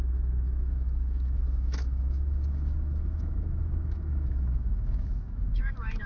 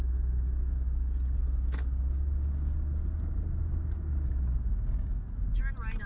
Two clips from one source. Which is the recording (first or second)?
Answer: second